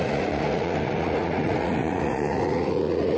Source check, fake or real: fake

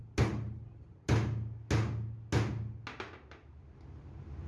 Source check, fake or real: real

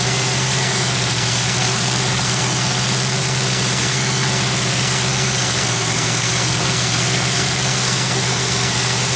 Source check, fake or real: fake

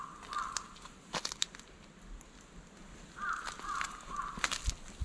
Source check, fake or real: real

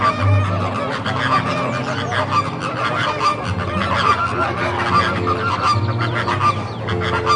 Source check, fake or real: real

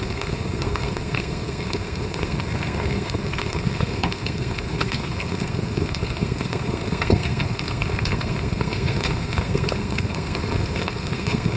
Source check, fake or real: fake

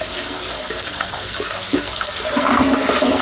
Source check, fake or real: fake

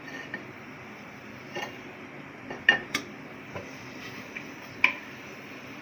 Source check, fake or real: fake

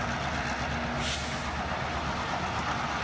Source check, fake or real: real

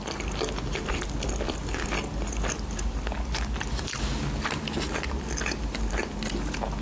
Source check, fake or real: real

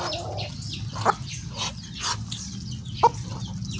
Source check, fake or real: real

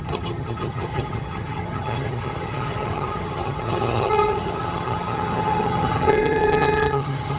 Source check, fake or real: fake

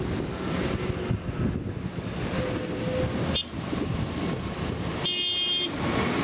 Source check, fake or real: real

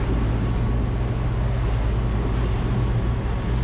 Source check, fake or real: real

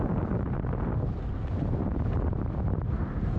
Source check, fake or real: fake